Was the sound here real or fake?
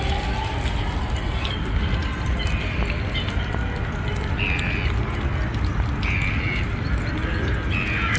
real